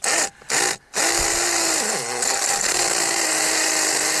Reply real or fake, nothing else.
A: real